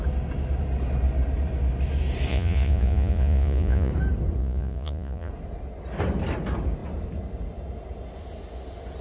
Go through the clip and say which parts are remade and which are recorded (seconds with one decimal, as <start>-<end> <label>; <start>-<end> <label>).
0.0-2.3 recorded; 2.3-3.9 remade; 3.9-4.4 recorded; 4.4-5.3 remade; 5.3-9.0 recorded